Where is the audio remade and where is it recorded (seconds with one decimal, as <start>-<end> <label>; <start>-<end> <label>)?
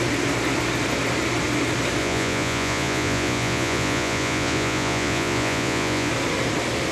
0.0-2.0 recorded; 2.0-6.1 remade; 6.1-6.9 recorded